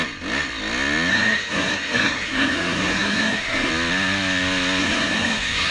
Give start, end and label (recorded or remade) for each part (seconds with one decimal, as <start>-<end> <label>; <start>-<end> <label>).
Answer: 0.0-1.1 recorded; 1.1-3.7 remade; 3.7-4.8 recorded; 4.8-5.7 remade